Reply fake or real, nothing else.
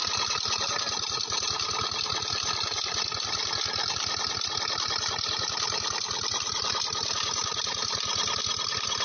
real